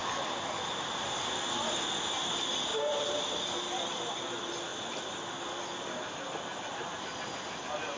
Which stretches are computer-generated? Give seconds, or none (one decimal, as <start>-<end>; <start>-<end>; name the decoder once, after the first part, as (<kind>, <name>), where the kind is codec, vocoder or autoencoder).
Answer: 2.7-3.2 (vocoder, BigVGAN v2)